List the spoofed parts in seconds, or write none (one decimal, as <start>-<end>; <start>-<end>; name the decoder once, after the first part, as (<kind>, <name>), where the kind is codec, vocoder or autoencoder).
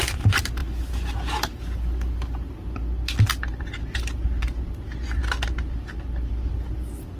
none